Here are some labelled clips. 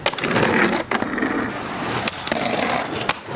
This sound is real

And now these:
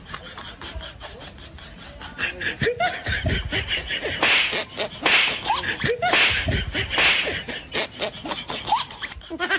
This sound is real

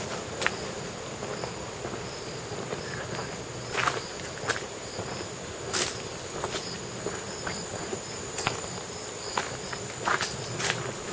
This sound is real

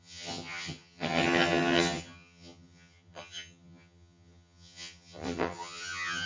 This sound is fake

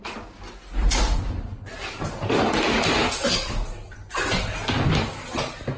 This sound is real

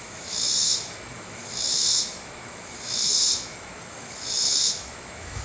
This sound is fake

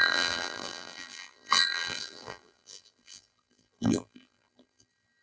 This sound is fake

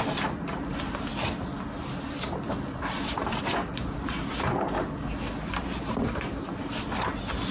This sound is real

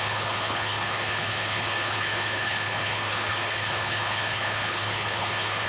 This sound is fake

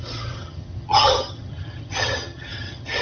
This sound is fake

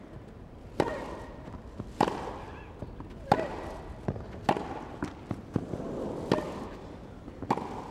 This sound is real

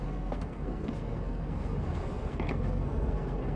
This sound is fake